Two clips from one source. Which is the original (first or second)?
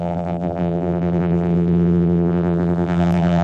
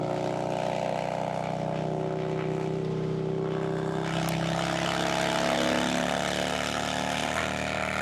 second